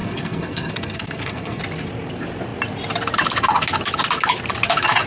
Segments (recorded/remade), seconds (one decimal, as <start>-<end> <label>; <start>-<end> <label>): 0.0-1.6 remade; 1.6-5.1 recorded